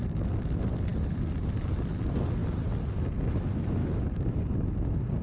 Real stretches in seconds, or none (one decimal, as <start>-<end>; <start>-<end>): 0.0-3.8; 4.7-5.2